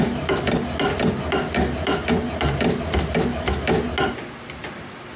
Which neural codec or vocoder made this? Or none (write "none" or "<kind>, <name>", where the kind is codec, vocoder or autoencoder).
none